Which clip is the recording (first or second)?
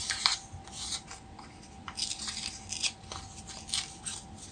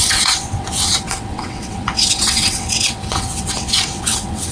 first